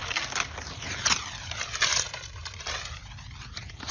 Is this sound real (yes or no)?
yes